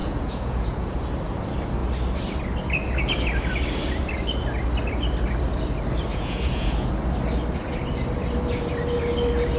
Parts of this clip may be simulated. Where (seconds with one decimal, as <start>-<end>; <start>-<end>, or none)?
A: 0.0-1.0; 6.1-6.9